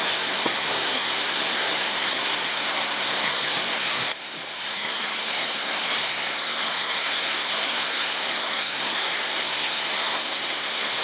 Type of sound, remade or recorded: remade